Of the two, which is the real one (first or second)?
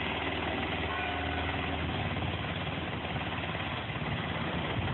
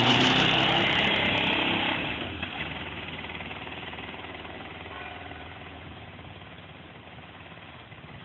first